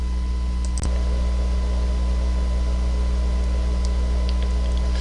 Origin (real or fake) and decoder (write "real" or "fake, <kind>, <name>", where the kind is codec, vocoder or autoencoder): real